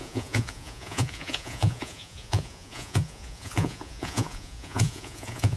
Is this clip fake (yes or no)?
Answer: yes